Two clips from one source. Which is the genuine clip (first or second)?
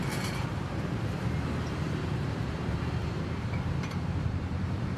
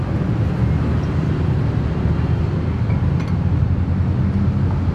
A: second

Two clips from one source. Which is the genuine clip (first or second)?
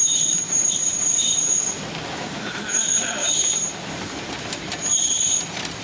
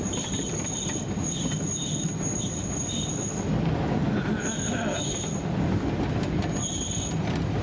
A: second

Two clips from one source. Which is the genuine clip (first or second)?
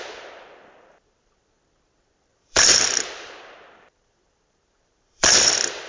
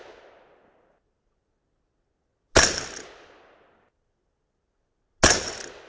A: second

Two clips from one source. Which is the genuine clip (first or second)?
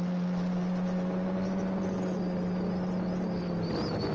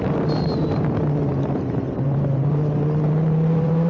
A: first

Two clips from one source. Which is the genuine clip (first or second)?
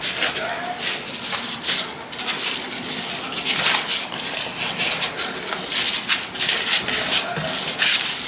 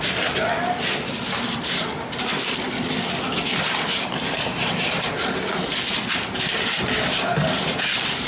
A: first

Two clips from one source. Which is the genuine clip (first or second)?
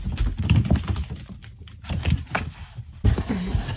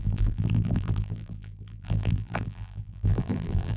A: first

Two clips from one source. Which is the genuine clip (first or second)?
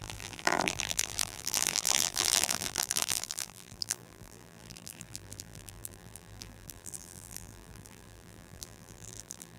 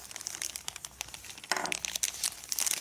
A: second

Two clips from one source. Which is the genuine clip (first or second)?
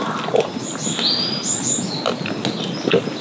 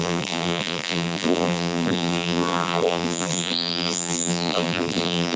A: first